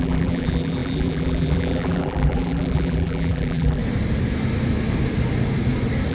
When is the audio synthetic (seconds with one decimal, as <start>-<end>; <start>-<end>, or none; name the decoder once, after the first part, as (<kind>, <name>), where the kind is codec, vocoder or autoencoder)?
0.0-3.8 (vocoder, BigVGAN v2)